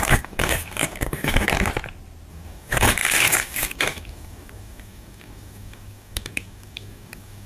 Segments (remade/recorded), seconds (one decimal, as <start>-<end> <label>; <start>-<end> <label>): 0.0-1.7 remade; 1.7-2.3 recorded; 2.3-7.5 remade